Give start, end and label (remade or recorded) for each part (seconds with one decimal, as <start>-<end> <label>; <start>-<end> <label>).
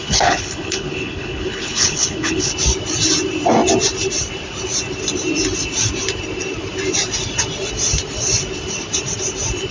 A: 0.0-2.5 remade; 2.5-9.7 recorded